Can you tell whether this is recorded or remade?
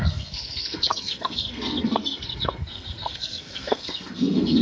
remade